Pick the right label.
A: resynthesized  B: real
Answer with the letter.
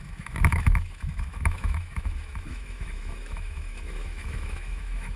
A